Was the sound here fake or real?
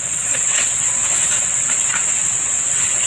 fake